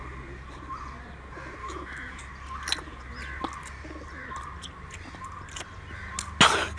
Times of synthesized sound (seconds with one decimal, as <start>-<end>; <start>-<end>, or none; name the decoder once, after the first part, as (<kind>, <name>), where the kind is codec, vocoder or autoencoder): 1.6-2.2 (autoencoder, DAC-VAE)